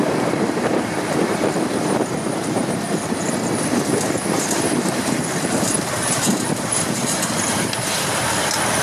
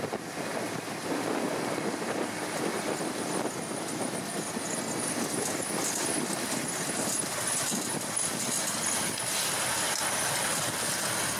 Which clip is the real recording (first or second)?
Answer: second